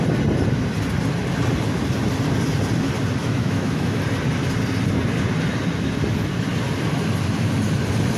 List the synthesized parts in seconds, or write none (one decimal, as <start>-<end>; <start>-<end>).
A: 3.2-4.0